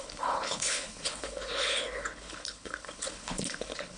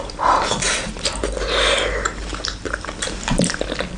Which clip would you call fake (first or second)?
first